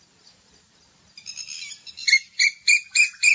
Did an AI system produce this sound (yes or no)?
no